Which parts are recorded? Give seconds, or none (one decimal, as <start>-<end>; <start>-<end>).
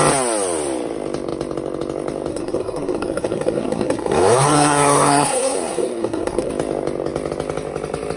0.0-2.3; 6.5-8.2